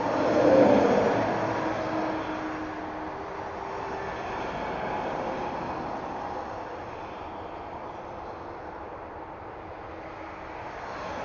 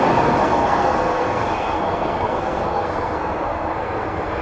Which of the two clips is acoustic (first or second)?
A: first